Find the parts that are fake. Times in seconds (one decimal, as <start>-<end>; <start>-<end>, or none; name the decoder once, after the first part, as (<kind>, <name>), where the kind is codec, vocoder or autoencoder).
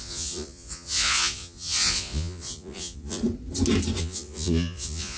0.0-3.2 (vocoder, Vocos); 4.0-5.2